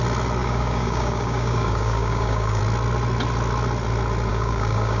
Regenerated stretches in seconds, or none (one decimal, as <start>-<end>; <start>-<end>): 0.4-2.6; 4.3-5.0

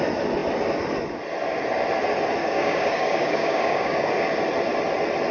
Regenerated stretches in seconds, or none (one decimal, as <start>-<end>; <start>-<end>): 2.4-4.1

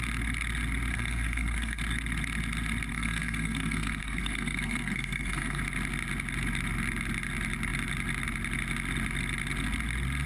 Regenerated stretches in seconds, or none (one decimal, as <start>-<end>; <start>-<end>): 0.9-1.8; 2.9-5.6

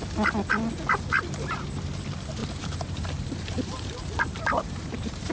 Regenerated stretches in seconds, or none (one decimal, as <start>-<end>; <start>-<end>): 2.4-5.3

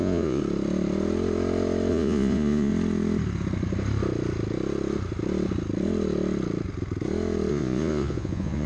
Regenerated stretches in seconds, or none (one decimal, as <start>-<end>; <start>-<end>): 0.0-0.4; 1.9-2.7; 7.5-8.7

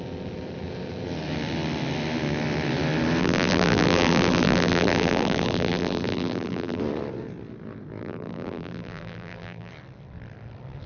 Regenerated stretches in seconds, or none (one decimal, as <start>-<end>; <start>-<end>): 3.2-6.8; 8.0-9.7

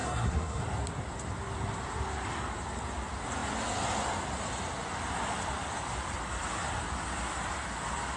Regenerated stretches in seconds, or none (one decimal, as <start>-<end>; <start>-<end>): 0.0-0.6

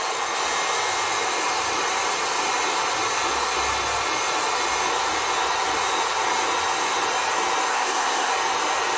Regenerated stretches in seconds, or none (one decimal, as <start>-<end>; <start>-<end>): 7.7-8.3